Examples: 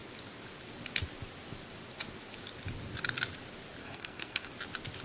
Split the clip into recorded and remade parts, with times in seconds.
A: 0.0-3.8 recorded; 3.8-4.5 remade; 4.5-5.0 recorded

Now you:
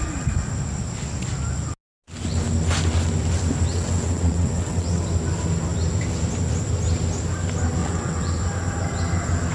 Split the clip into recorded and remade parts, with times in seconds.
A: 0.0-3.7 recorded; 3.7-5.0 remade; 5.0-7.8 recorded; 7.8-8.4 remade; 8.4-9.5 recorded

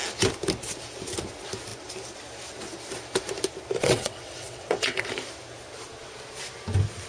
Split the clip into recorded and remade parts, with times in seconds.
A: 0.0-3.8 recorded; 3.8-5.1 remade; 5.1-7.1 recorded

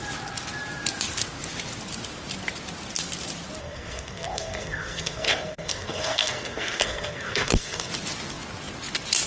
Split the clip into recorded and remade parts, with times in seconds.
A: 0.0-3.6 recorded; 3.6-7.9 remade; 7.9-9.3 recorded

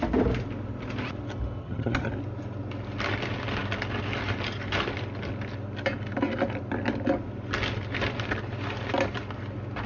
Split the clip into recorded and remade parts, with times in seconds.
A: 0.0-1.6 recorded; 1.6-2.1 remade; 2.1-9.9 recorded

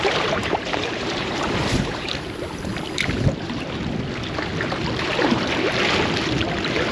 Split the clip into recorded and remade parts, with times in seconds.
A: 0.0-2.7 remade; 2.7-6.9 recorded

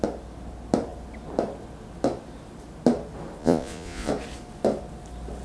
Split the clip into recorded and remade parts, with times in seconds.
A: 0.0-3.4 recorded; 3.4-4.1 remade; 4.1-5.4 recorded